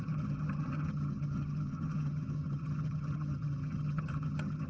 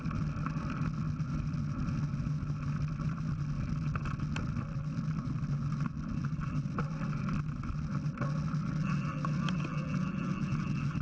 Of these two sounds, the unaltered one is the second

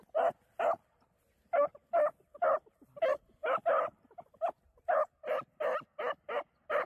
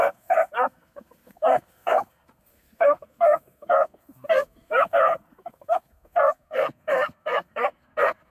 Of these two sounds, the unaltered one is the first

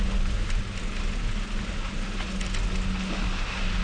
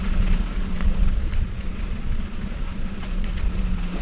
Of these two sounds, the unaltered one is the first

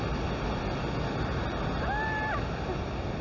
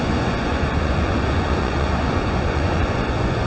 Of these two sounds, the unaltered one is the first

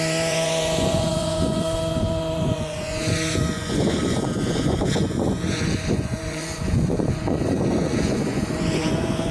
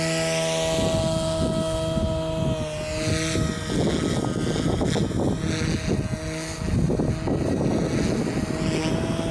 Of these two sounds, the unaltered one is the second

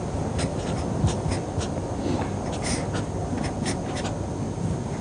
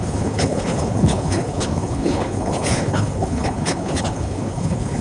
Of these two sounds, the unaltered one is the first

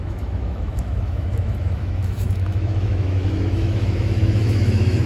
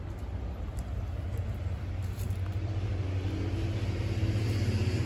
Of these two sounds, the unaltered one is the second